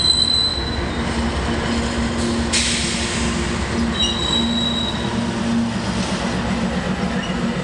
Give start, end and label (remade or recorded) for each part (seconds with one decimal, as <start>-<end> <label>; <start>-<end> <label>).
0.0-7.6 recorded